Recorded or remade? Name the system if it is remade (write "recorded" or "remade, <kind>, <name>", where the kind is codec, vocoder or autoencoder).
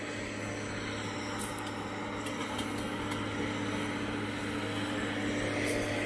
recorded